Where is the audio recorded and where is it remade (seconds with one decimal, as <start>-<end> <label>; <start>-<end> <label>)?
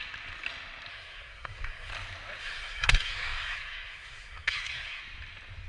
0.0-0.9 recorded; 0.9-1.9 remade; 1.9-2.4 recorded; 2.4-5.0 remade; 5.0-5.7 recorded